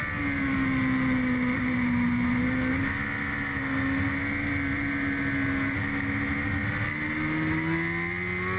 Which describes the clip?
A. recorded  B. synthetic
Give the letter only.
A